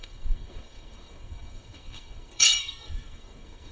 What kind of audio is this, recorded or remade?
remade